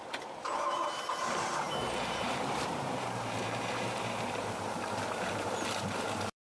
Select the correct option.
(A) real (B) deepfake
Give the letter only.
B